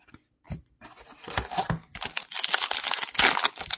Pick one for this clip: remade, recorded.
recorded